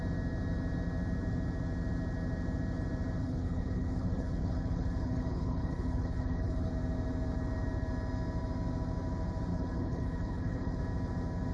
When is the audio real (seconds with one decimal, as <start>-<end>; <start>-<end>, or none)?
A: 0.0-3.2; 6.7-9.5; 10.8-11.5